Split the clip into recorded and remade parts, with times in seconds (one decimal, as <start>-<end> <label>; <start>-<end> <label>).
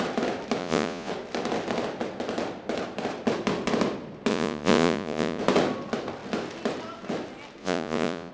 0.0-0.6 recorded; 0.6-1.1 remade; 1.1-4.3 recorded; 4.3-5.4 remade; 5.4-7.6 recorded; 7.6-8.3 remade